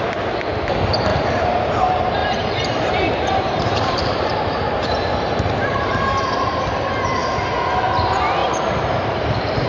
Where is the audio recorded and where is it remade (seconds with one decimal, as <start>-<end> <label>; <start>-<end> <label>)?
0.0-1.1 recorded; 1.1-1.7 remade; 1.7-2.2 recorded; 2.2-6.1 remade; 6.1-8.4 recorded; 8.4-9.7 remade